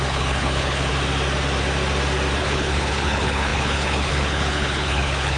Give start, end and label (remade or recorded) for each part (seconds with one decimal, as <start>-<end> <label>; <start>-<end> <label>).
0.0-0.9 remade; 0.9-2.4 recorded; 2.4-5.4 remade